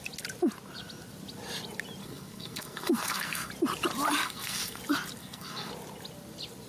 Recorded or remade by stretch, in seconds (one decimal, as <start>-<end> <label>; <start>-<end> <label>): 0.0-2.0 recorded; 2.0-3.5 remade; 3.5-4.2 recorded; 4.2-4.8 remade; 4.8-5.2 recorded; 5.2-5.7 remade; 5.7-6.7 recorded